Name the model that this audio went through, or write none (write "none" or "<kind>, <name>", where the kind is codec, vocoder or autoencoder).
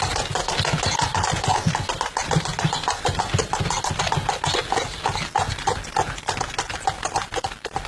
none